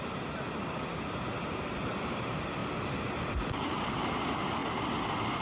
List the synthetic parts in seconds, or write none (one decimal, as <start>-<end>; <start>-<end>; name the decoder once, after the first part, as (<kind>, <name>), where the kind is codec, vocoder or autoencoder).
none